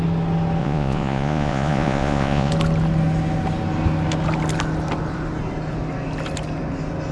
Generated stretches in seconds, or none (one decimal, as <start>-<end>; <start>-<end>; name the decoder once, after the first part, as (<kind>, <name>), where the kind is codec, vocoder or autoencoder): 0.6-2.5 (vocoder, Vocos)